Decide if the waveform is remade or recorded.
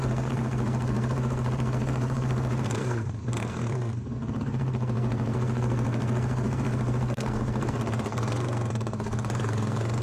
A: remade